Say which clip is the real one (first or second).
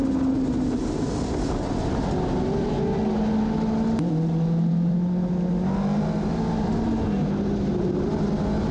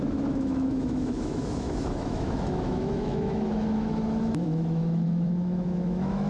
first